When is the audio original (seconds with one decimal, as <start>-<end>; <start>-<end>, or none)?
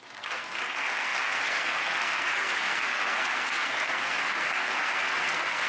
none